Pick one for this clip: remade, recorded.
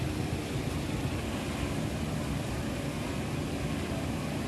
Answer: recorded